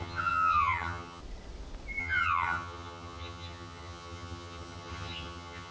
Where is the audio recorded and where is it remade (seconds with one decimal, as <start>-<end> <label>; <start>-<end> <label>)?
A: 0.0-1.2 remade; 1.2-2.0 recorded; 2.0-5.7 remade